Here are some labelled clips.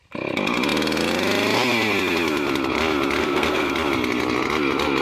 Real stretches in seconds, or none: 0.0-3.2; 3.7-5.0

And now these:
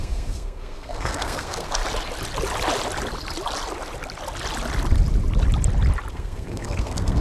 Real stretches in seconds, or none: 1.8-6.1